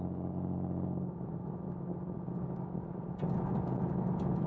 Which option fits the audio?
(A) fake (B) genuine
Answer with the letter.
B